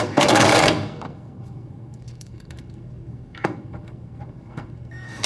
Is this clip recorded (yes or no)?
no